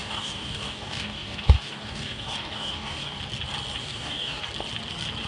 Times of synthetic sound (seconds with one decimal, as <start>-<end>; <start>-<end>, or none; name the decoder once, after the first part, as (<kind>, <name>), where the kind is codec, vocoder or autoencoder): 0.0-3.2 (codec, DAC); 3.8-4.4